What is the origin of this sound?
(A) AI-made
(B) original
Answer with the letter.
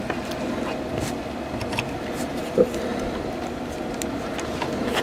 B